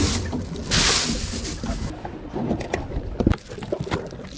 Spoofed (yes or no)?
no